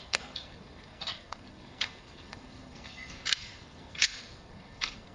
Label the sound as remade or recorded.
remade